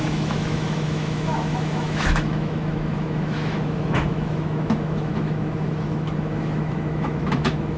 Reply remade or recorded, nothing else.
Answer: remade